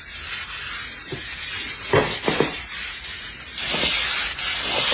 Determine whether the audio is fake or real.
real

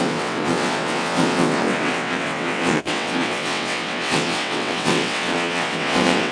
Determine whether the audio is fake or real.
fake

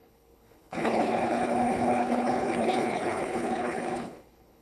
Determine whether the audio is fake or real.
fake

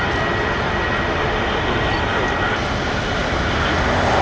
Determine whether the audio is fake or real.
real